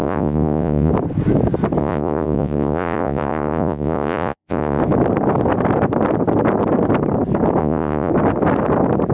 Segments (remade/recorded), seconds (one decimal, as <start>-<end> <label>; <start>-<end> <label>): 0.0-0.9 remade; 0.9-1.8 recorded; 1.8-4.8 remade; 4.8-7.6 recorded; 7.6-8.1 remade; 8.1-9.1 recorded